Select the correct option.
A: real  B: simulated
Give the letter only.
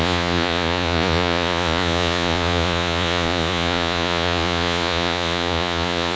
B